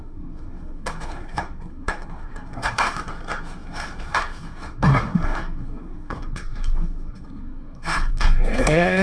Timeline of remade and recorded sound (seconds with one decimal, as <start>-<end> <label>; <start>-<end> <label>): 0.0-9.0 remade